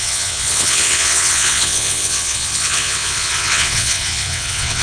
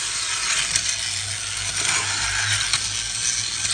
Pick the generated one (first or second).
first